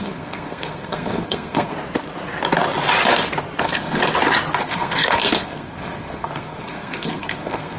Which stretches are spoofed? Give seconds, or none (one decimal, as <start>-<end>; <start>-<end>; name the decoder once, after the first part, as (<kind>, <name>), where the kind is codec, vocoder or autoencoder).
0.0-1.7 (codec, SNAC); 3.6-4.0; 4.6-7.8